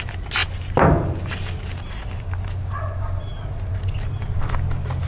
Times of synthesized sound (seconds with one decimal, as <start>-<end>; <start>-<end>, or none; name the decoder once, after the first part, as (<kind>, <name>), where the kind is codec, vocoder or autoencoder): none